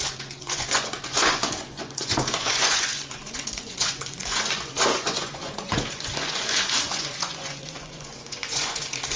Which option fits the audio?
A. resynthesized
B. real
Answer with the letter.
A